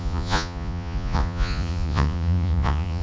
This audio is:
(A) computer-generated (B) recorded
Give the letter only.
A